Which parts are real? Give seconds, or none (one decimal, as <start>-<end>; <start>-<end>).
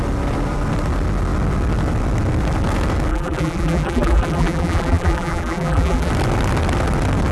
0.0-3.1; 6.1-7.3